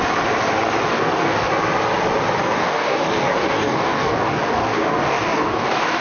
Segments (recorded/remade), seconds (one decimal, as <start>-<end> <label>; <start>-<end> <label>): 0.0-0.9 recorded; 0.9-1.5 remade; 1.5-2.4 recorded; 2.4-6.0 remade